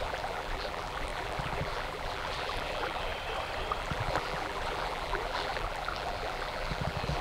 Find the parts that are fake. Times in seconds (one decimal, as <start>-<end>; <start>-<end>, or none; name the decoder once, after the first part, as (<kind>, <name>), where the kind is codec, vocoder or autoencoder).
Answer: 0.0-3.1 (vocoder, BigVGAN v2); 3.8-7.2